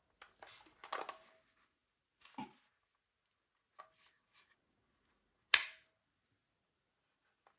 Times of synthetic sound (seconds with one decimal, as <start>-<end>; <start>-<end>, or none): none